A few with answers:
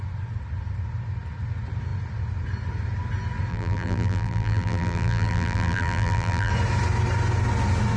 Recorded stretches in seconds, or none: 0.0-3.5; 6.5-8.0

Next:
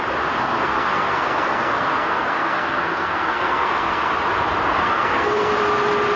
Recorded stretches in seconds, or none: 0.0-0.4; 4.1-4.8; 5.5-6.2

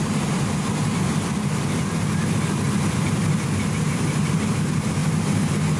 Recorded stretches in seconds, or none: 5.0-5.8

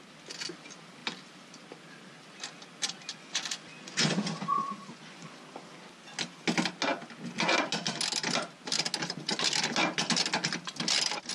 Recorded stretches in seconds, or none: 0.0-3.1; 5.4-11.3

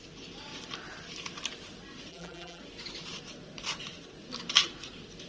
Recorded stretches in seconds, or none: 0.0-2.1; 2.6-5.3

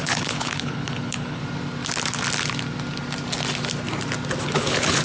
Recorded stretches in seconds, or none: 1.4-4.4